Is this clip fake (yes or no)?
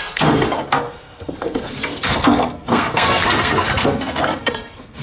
yes